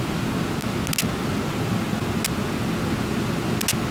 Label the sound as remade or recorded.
recorded